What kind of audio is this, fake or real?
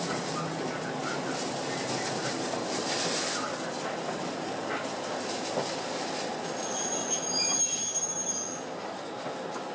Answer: real